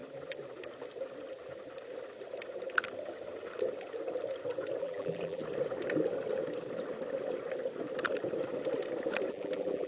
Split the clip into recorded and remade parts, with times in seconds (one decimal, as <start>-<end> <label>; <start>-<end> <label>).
0.0-4.8 recorded; 4.8-5.4 remade; 5.4-9.3 recorded; 9.3-9.9 remade